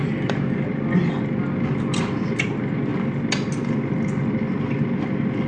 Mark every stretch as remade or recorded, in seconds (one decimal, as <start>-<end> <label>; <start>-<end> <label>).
0.0-0.7 remade; 0.7-5.5 recorded